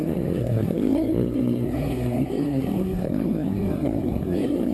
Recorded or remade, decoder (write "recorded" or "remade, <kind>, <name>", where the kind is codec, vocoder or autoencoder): remade, codec, SNAC